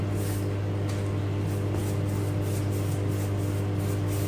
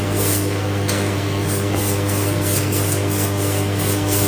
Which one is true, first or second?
first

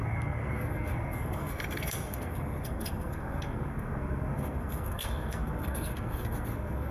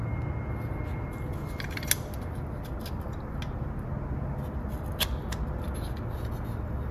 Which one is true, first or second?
second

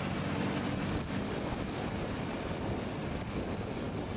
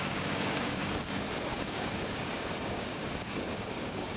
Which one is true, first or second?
first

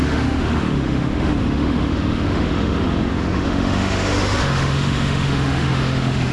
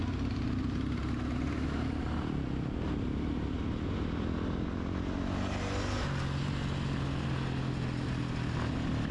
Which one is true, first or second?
second